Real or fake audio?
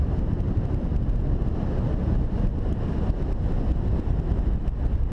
real